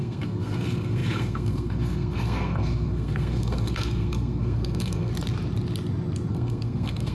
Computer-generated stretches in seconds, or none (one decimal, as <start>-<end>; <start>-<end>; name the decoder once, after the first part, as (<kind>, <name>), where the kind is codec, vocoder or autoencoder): 0.0-5.1 (codec, SNAC); 6.3-7.1